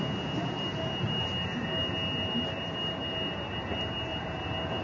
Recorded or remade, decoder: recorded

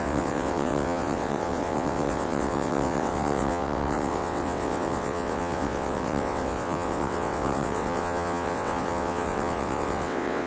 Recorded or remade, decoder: remade, vocoder, WaveNeXt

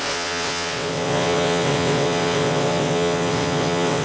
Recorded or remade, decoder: remade, vocoder, WaveNeXt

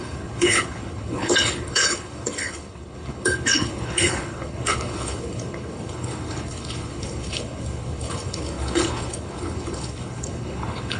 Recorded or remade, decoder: remade, codec, HILCodec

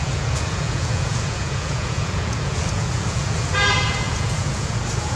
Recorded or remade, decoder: remade, vocoder, Vocos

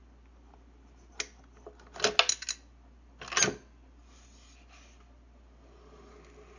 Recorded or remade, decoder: recorded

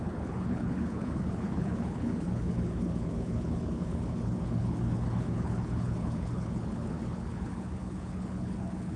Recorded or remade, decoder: remade, codec, HILCodec